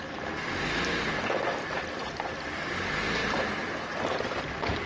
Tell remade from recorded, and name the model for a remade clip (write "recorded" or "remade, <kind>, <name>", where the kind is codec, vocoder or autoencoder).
recorded